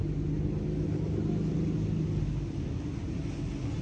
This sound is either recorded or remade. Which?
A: recorded